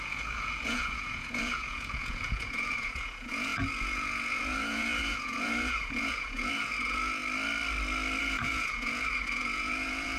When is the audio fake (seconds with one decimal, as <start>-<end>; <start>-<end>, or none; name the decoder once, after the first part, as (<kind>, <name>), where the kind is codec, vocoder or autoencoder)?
0.0-7.2 (vocoder, Vocos); 8.2-10.2